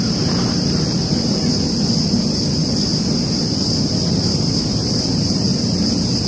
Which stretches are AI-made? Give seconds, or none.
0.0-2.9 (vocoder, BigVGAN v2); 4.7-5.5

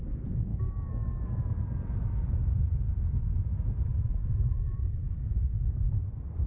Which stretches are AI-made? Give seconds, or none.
none